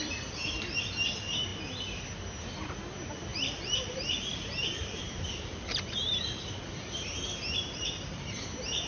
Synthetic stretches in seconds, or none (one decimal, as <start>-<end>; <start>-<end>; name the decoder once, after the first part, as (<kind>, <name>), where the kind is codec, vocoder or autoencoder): 3.3-8.4 (vocoder, BigVGAN v2)